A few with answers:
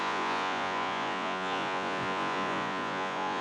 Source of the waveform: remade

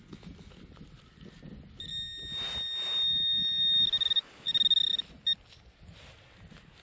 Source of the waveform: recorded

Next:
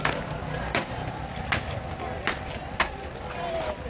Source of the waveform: recorded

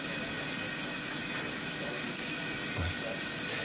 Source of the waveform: recorded